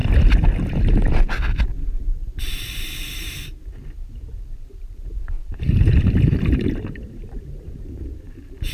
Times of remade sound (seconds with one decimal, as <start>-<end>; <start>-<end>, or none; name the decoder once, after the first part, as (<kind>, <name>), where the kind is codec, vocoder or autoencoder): 2.4-8.7 (vocoder, BigVGAN v2)